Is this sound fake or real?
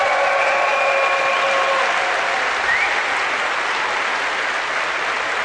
real